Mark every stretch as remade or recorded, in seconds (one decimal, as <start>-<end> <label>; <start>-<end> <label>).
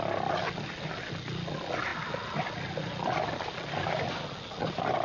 0.0-5.0 recorded